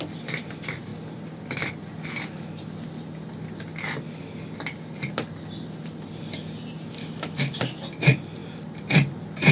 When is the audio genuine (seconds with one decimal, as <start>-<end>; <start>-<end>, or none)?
0.0-7.0; 7.6-9.5